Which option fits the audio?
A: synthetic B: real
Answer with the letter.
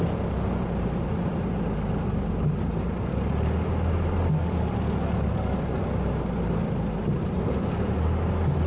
B